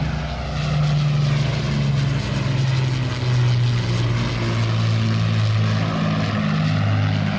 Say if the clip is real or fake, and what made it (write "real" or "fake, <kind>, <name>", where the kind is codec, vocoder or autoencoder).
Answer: real